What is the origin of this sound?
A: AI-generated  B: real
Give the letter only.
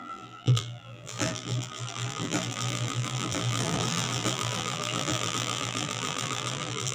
A